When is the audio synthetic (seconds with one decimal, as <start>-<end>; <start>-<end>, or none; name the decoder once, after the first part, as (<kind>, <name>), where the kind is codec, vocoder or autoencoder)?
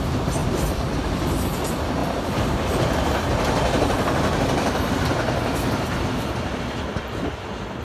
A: 0.4-1.4 (vocoder, BigVGAN v2)